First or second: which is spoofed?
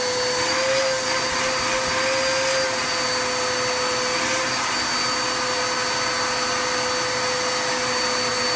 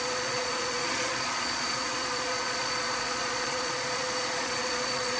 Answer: second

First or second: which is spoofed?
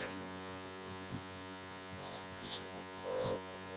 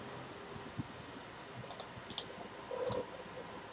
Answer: first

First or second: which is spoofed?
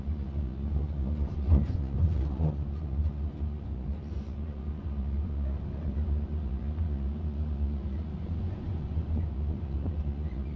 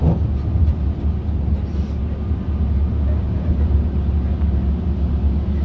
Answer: first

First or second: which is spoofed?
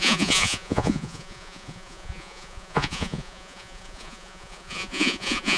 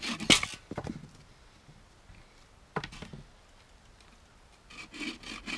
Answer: first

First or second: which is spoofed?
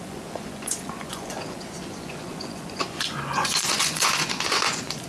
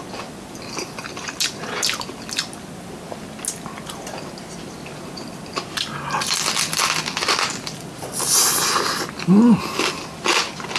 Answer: first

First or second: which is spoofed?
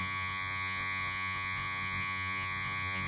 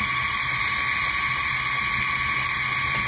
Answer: first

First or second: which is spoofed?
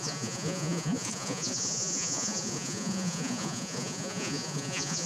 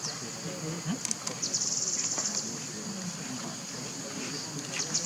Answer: first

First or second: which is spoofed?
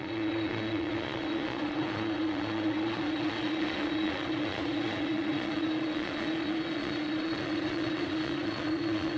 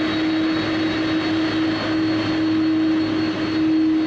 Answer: first